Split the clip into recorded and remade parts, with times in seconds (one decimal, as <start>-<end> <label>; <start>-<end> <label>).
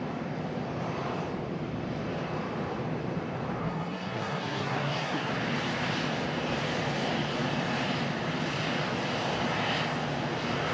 0.0-3.6 recorded; 3.6-5.3 remade; 5.3-10.7 recorded